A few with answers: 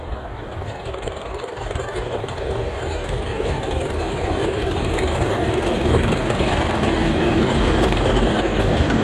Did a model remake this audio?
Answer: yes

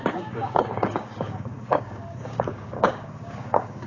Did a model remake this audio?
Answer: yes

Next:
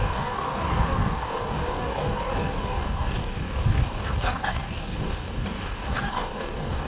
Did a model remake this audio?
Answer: yes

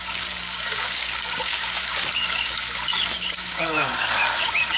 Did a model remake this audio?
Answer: yes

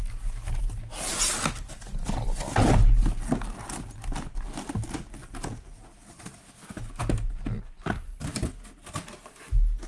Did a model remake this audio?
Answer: no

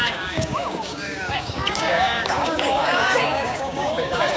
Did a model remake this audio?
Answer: yes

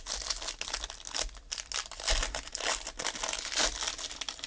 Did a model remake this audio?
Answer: no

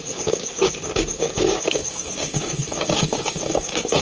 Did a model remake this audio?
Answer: yes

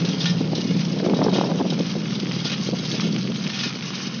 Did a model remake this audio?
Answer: no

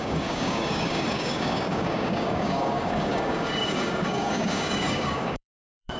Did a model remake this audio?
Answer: yes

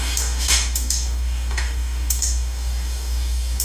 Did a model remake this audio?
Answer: yes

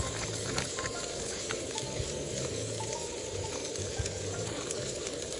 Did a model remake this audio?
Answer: yes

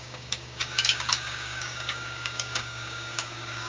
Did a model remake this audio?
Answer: yes